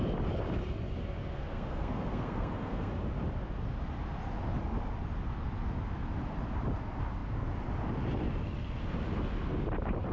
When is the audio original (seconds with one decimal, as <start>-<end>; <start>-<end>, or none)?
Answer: 0.0-1.4; 2.9-10.1